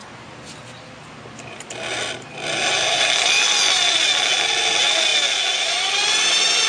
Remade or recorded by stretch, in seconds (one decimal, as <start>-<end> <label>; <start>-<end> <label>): 0.0-6.7 recorded